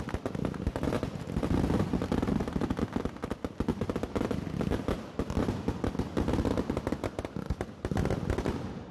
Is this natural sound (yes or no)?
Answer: yes